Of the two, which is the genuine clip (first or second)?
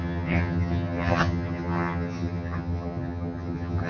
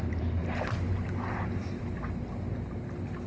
second